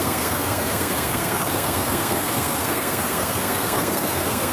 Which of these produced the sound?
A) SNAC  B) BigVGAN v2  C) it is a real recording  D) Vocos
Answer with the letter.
A